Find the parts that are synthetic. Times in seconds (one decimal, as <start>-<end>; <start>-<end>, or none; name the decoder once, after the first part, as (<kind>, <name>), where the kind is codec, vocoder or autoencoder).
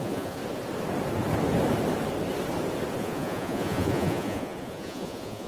0.0-0.4 (vocoder, Vocos); 3.0-5.5